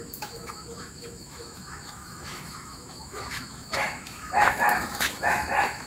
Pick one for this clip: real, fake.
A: fake